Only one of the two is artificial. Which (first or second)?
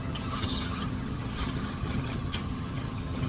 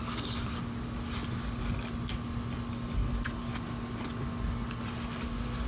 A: first